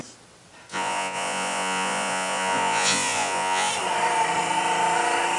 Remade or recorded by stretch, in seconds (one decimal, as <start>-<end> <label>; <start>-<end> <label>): 0.0-0.7 recorded; 0.7-3.7 remade; 3.7-5.4 recorded